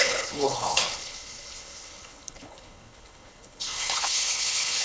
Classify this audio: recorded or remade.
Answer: remade